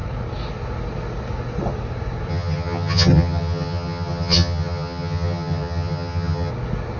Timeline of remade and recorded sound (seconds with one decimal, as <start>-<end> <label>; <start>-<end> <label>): 0.0-2.3 recorded; 2.3-6.5 remade; 6.5-7.0 recorded

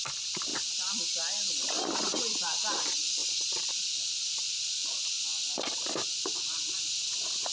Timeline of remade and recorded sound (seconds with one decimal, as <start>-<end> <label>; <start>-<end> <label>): 0.0-7.5 recorded

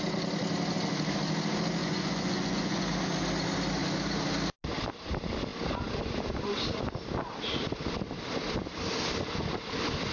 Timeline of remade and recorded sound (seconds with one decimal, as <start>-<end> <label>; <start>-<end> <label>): 0.0-1.8 recorded; 1.8-2.9 remade; 2.9-10.1 recorded

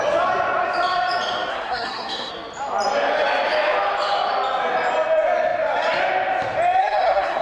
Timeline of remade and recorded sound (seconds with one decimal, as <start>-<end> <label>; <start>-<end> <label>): 0.0-1.5 recorded; 1.5-2.3 remade; 2.3-6.8 recorded; 6.8-7.4 remade

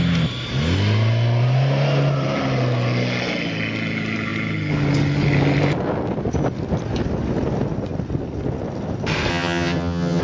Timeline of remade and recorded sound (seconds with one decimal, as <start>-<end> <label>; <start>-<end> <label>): 0.0-9.3 recorded; 9.3-10.2 remade

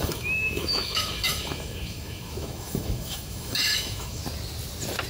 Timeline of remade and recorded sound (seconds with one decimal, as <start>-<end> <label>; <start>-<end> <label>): 0.0-4.2 remade; 4.2-5.1 recorded